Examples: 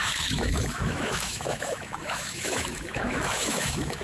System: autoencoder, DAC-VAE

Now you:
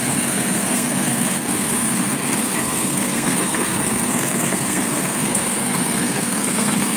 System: codec, SNAC